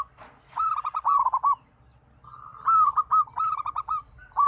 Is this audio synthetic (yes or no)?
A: no